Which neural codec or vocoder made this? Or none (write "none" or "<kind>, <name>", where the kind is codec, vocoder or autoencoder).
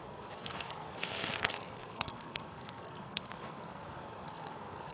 codec, SNAC